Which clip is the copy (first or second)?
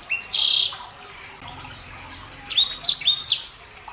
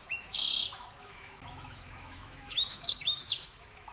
second